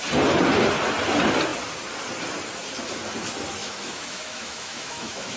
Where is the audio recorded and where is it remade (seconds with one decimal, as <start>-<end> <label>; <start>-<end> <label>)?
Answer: 0.0-3.6 recorded; 3.6-5.4 remade